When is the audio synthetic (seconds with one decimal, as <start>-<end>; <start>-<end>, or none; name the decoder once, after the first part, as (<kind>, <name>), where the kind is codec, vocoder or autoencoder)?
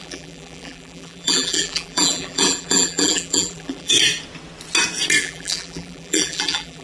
0.0-3.9 (vocoder, BigVGAN v2); 5.2-6.8